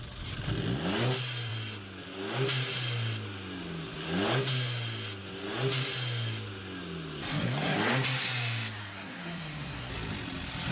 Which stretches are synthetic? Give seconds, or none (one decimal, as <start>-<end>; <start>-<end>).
7.3-7.9; 8.8-9.9